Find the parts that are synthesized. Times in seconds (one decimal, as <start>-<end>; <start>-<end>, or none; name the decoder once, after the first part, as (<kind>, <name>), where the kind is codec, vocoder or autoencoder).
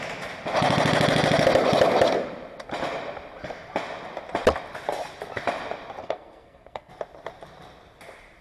6.0-6.9 (codec, SNAC)